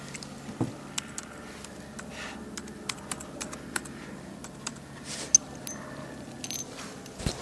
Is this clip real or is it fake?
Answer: real